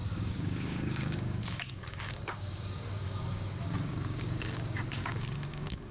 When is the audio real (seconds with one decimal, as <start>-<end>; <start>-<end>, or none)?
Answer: none